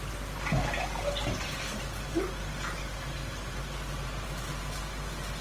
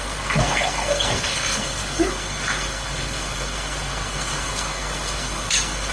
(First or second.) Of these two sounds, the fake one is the second